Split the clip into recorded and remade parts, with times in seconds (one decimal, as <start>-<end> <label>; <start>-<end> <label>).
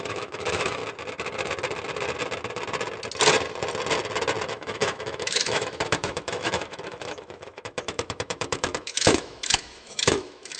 0.0-0.8 remade; 0.8-4.5 recorded; 4.5-10.6 remade